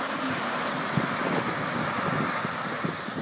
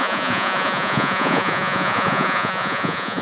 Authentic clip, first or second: first